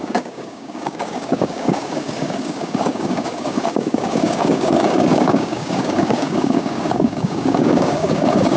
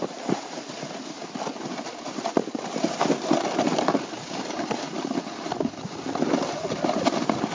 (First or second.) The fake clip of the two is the first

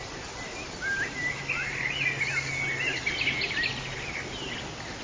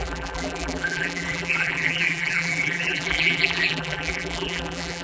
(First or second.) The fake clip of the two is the second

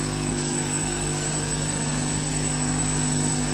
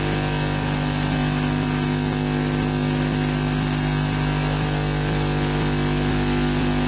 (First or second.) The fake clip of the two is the first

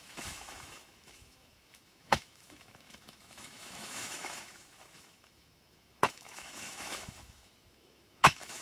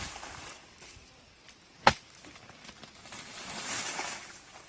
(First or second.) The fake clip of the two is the first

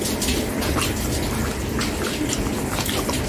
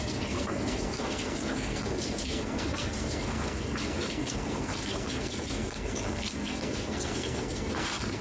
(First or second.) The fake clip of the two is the second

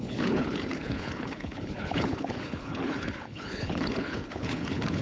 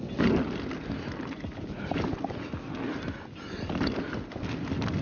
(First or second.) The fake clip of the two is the first